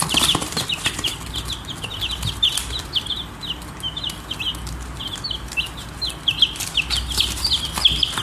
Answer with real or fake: real